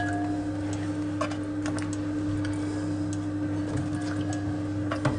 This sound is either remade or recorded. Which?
recorded